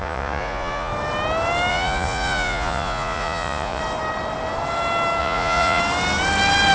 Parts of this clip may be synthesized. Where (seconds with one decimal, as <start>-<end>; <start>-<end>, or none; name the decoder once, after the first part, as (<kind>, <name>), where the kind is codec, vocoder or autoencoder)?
0.0-0.9 (vocoder, Vocos); 1.7-3.8; 5.2-5.8